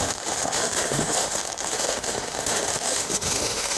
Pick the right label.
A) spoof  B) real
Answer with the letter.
A